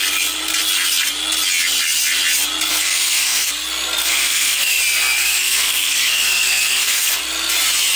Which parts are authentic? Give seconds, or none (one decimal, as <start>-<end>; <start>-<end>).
0.0-2.7; 3.5-4.0; 4.8-5.2; 7.2-8.0